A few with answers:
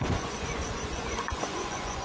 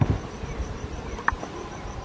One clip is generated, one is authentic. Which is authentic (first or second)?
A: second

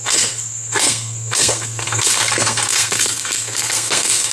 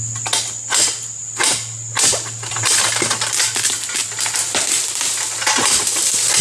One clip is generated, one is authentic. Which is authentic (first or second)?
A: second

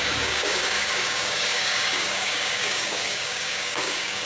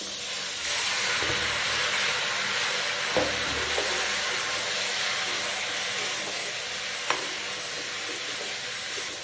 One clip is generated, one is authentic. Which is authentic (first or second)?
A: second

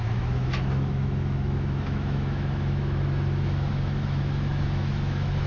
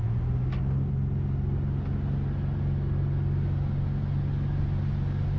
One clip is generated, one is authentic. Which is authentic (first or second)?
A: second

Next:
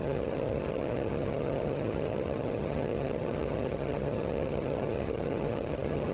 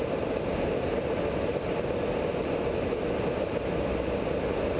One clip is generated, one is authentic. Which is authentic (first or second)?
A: second